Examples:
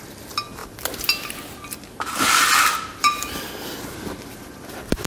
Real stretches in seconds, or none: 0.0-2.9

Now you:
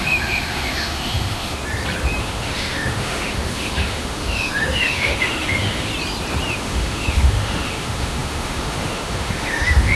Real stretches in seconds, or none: 1.6-2.2; 5.9-6.5

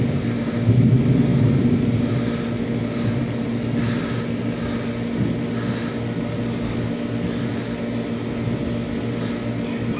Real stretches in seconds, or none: 0.0-10.0